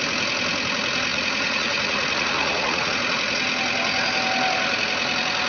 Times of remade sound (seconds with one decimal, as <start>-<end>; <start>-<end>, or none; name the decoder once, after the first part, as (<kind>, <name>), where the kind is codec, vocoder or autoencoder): 1.1-2.9 (vocoder, Vocos)